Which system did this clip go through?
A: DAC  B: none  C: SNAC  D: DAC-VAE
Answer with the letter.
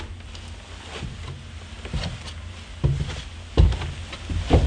B